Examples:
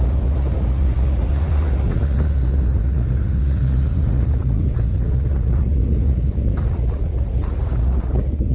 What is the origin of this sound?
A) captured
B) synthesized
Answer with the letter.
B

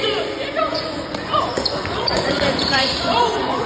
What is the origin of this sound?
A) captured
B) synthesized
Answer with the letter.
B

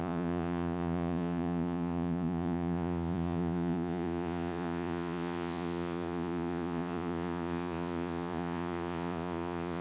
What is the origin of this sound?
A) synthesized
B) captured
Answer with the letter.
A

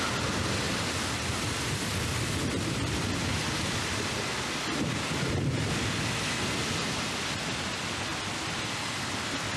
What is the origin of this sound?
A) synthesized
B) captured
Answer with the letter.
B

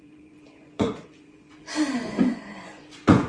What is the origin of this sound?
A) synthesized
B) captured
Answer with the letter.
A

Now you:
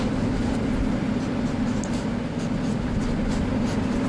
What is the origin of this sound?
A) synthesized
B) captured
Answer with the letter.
B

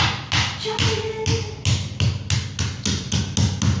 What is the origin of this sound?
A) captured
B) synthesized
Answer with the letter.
A